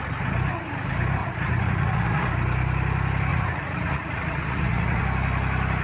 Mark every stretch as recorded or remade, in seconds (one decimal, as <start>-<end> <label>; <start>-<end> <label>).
0.0-1.2 recorded; 1.2-2.3 remade; 2.3-3.3 recorded; 3.3-5.0 remade; 5.0-5.8 recorded